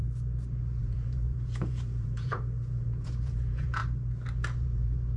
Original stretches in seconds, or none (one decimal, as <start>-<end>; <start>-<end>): 0.0-0.8; 3.8-4.6